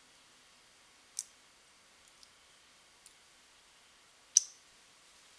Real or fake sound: real